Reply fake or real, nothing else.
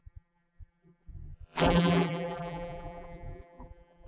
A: fake